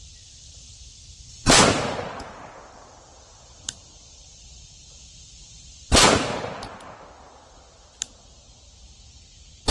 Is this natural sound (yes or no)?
yes